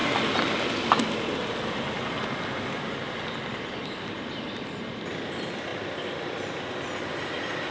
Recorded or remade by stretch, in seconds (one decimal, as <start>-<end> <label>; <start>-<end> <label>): 0.0-7.7 recorded